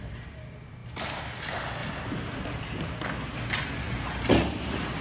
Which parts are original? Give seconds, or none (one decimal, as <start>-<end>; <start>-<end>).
0.0-5.0